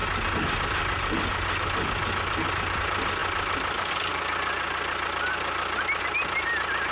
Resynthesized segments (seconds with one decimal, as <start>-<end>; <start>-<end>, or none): none